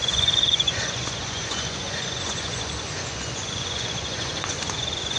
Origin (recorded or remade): remade